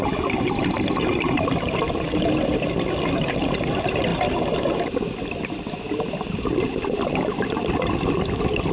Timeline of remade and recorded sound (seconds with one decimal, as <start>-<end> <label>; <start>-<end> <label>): 0.0-8.7 recorded